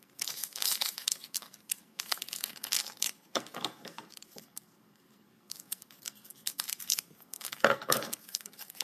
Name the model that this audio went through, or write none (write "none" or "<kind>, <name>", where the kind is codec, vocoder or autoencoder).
codec, SNAC